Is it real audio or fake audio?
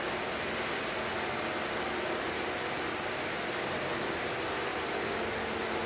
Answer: real